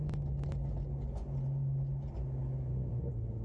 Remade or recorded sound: recorded